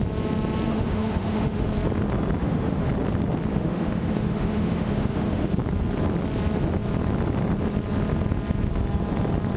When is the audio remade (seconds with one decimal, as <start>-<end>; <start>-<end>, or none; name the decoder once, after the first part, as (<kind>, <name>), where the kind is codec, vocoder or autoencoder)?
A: 0.7-1.7 (autoencoder, DAC-VAE); 2.4-2.9; 3.5-5.5